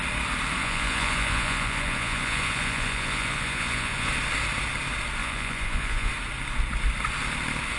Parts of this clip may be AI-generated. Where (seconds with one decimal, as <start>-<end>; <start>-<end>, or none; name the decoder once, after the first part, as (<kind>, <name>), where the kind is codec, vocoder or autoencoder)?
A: 0.6-4.1 (vocoder, Vocos); 5.2-6.1